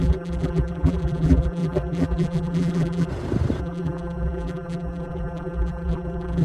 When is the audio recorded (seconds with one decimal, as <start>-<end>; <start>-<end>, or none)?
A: 3.1-3.6